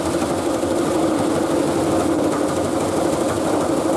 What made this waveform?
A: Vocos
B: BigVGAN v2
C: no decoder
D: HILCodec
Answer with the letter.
C